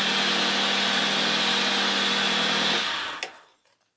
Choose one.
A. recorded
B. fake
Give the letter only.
A